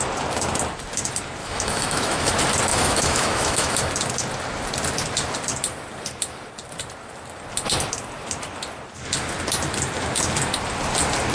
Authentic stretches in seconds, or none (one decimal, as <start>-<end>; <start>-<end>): 0.0-1.4; 2.3-2.7; 3.9-11.3